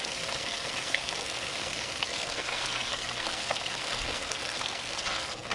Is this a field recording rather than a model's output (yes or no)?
no